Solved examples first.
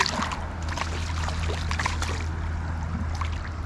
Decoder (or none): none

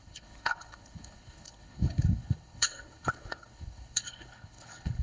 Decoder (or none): codec, HILCodec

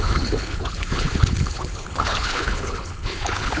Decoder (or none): codec, HILCodec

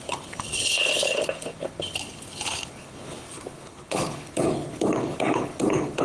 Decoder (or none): codec, HILCodec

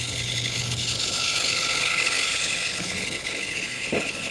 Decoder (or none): codec, HILCodec